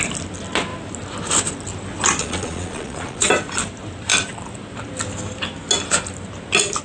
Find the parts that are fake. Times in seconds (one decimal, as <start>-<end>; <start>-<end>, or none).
2.2-3.3